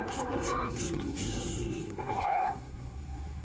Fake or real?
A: fake